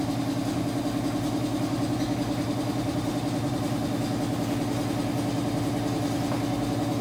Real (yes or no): yes